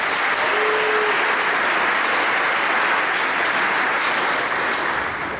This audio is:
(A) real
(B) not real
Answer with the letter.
A